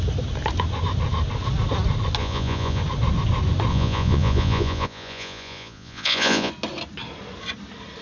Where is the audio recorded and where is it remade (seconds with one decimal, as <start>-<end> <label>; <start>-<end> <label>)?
0.0-2.2 recorded; 2.2-2.8 remade; 2.8-3.7 recorded; 3.7-6.5 remade; 6.5-8.0 recorded